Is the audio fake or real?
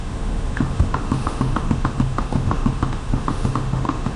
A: fake